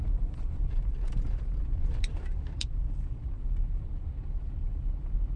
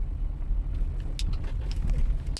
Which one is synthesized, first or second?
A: first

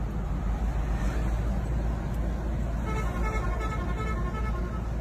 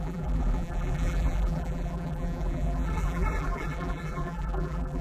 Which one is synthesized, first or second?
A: second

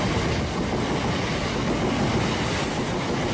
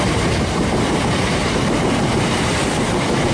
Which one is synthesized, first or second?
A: second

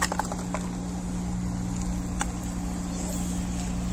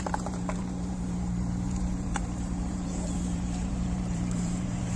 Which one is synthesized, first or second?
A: second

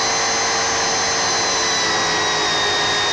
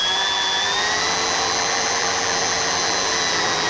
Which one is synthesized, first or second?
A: second